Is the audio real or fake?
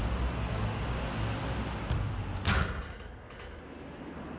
real